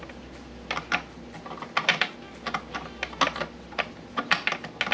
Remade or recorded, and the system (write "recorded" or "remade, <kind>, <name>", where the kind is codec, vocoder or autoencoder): recorded